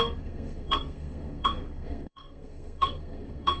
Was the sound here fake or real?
fake